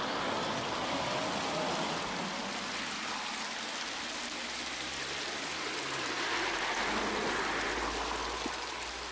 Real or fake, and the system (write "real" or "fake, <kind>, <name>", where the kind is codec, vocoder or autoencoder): real